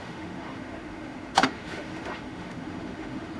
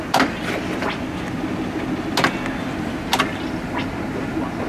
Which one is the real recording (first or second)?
second